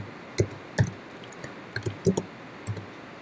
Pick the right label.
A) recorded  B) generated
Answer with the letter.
A